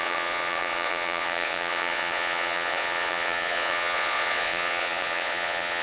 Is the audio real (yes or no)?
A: no